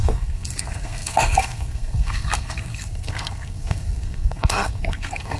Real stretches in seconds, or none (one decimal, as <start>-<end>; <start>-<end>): none